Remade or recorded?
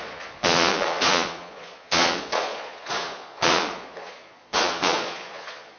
remade